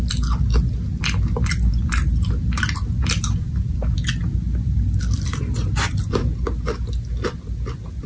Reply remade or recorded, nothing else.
recorded